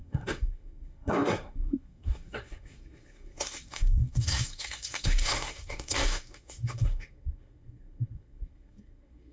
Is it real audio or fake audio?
fake